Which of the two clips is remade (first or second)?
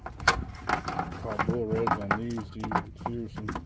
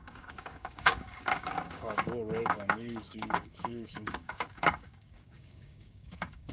second